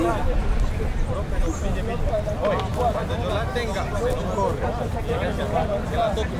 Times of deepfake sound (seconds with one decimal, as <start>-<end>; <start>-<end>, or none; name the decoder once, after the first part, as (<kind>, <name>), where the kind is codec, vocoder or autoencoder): none